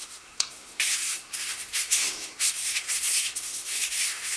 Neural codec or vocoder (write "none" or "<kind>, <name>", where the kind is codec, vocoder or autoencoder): codec, SNAC